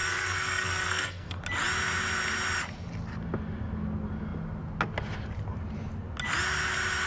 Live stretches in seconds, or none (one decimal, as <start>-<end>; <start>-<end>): 1.4-7.1